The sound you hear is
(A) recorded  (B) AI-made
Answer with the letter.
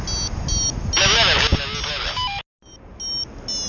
A